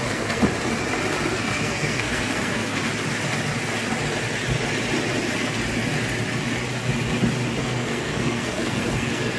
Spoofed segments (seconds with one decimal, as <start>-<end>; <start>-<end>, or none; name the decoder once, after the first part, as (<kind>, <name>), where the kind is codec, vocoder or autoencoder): 0.0-0.4 (codec, SNAC); 1.3-2.8; 7.6-9.4